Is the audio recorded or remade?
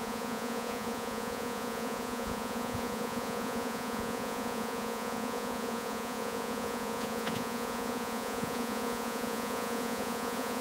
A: remade